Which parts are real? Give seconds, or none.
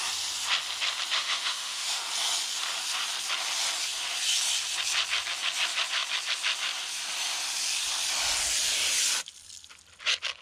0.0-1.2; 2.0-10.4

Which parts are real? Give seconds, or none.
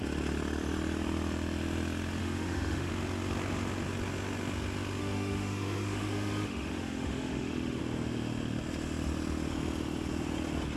0.0-2.2; 2.9-5.0; 7.8-10.8